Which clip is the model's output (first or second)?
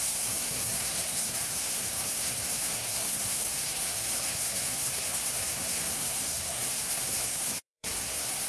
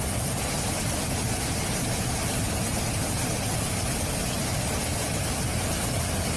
first